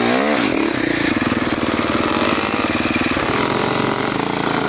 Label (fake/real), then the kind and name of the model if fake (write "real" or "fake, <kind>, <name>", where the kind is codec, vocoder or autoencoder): real